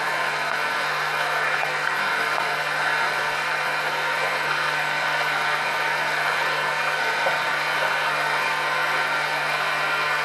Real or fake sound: fake